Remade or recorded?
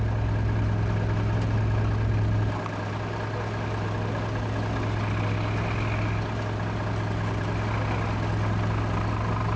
recorded